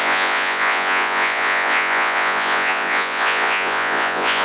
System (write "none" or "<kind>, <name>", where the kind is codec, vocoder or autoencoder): vocoder, Vocos